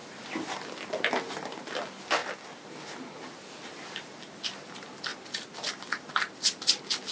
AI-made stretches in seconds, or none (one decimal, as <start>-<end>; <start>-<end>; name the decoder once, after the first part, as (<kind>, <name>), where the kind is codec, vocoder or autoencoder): none